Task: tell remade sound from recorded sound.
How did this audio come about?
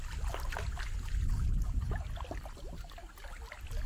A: recorded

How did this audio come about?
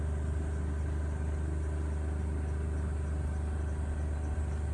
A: recorded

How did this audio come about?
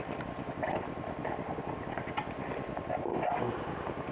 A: recorded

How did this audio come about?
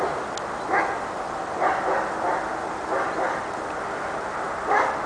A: recorded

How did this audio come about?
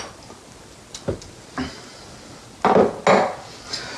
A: recorded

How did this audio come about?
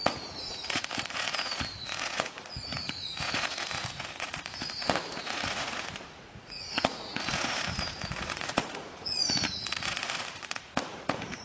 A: remade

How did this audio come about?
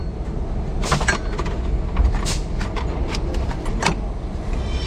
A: recorded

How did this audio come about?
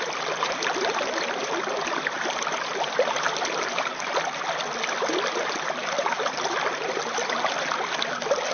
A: recorded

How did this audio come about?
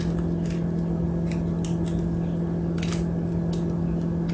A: recorded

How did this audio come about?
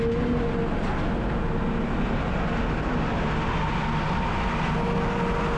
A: recorded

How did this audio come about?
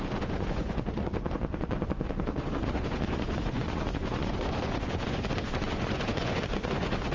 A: remade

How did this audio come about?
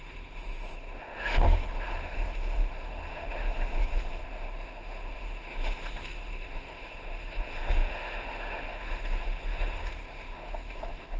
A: remade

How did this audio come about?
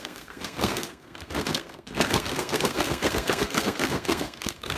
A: remade